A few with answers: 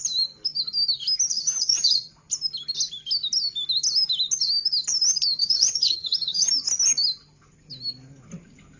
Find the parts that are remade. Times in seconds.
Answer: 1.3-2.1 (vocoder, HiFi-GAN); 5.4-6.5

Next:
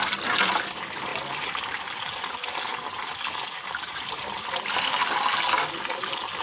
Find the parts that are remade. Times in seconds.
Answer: none

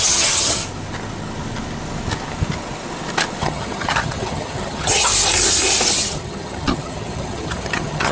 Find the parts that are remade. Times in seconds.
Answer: 0.0-0.6 (vocoder, HiFi-GAN); 3.4-5.1; 5.9-8.1

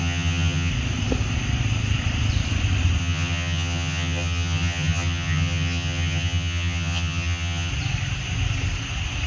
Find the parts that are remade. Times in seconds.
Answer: 0.0-0.7 (vocoder, HiFi-GAN); 3.0-7.7

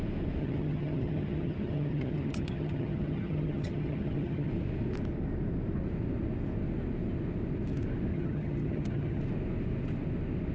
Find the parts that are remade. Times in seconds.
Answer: 0.4-4.5 (vocoder, HiFi-GAN); 8.1-9.2